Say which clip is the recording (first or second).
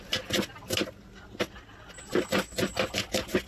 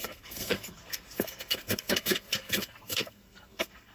first